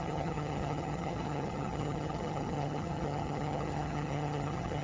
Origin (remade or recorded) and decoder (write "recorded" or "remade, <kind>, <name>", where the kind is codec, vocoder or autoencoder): remade, vocoder, HiFi-GAN